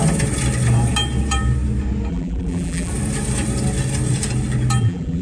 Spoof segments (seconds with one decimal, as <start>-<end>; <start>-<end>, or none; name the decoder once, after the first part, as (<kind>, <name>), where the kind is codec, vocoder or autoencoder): 2.1-2.9 (vocoder, BigVGAN v2); 4.8-5.2